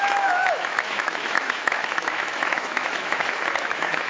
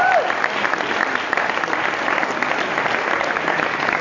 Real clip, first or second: second